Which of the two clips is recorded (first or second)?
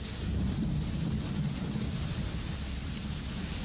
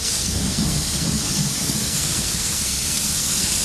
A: first